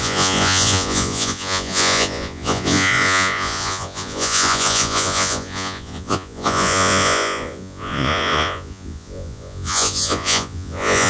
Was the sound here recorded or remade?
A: remade